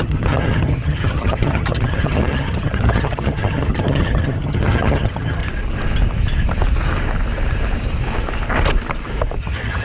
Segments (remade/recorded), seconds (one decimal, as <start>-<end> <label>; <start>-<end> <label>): 0.0-5.4 remade; 5.4-9.4 recorded; 9.4-9.8 remade